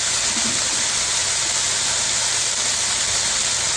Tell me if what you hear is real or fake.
real